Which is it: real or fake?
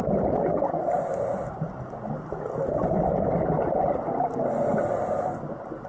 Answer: real